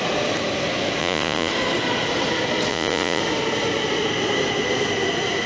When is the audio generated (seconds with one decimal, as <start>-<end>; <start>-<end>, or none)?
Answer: 1.0-1.5; 2.7-3.2